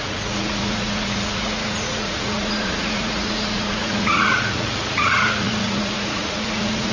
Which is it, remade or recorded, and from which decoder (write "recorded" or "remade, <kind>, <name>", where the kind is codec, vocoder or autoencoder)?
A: remade, vocoder, Vocos